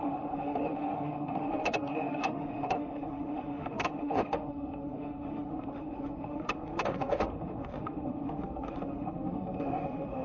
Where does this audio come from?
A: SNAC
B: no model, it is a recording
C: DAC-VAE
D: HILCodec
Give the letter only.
C